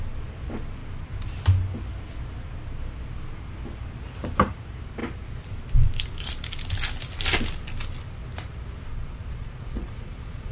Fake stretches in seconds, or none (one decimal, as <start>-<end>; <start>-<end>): 8.9-10.5